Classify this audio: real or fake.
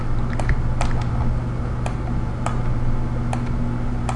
real